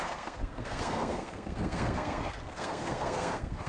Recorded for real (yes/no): no